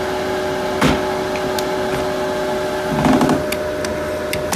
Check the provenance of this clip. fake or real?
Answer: real